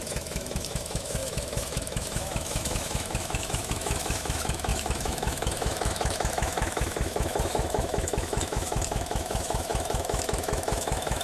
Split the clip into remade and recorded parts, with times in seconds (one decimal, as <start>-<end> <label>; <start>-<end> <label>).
0.0-11.2 remade